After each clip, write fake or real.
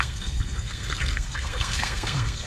fake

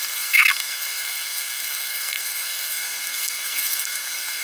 fake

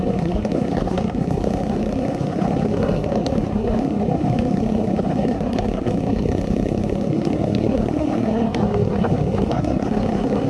fake